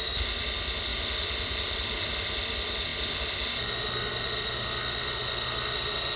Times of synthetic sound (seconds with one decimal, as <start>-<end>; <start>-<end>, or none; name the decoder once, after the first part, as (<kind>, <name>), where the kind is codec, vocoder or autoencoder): 0.9-2.0 (vocoder, BigVGAN v2)